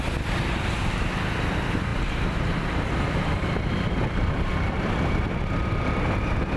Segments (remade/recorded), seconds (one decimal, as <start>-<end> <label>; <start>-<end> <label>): 0.0-6.6 recorded